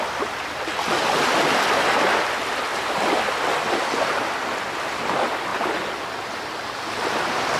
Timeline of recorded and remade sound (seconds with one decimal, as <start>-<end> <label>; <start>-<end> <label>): 0.0-2.7 recorded; 2.7-3.6 remade; 3.6-7.6 recorded